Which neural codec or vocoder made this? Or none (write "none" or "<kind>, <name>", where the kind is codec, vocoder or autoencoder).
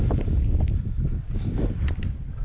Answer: none